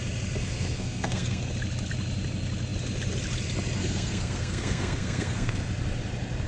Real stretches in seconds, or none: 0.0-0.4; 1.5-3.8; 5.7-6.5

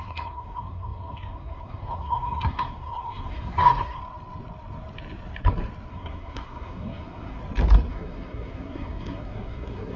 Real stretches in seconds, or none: 4.0-5.9; 7.4-7.9